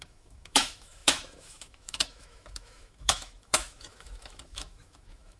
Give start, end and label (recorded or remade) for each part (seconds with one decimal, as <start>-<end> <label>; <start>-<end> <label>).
0.0-5.4 remade